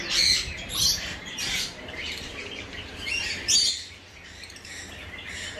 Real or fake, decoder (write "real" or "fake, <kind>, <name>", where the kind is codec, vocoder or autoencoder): fake, vocoder, BigVGAN v2